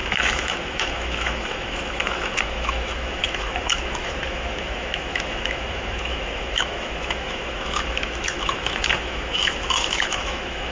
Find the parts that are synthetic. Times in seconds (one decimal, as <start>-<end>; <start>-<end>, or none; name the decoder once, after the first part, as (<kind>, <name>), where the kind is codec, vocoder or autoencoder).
0.0-10.7 (autoencoder, DAC-VAE)